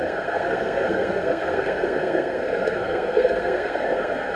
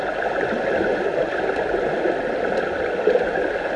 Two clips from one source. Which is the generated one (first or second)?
first